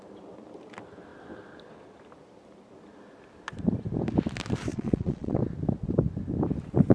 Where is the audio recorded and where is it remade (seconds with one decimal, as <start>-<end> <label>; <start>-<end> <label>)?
0.0-4.7 recorded; 4.7-5.4 remade; 5.4-6.9 recorded